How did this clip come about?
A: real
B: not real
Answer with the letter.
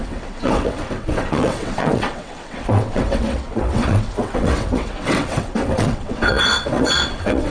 B